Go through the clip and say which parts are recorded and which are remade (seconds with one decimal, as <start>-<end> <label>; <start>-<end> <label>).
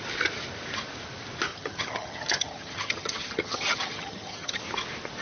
0.0-1.5 recorded; 1.5-4.6 remade; 4.6-5.2 recorded